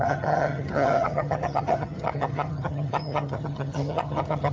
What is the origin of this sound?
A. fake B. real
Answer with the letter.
A